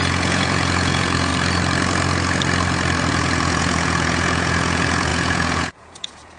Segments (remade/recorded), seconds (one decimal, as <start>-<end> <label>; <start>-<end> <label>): 0.0-1.3 remade; 1.3-3.1 recorded; 3.1-6.4 remade